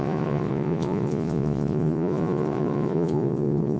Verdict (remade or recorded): remade